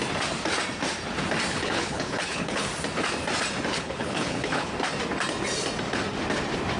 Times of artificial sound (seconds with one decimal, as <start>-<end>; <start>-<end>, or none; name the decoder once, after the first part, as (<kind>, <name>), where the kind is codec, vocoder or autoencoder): 1.5-2.7 (codec, HILCodec); 3.7-4.7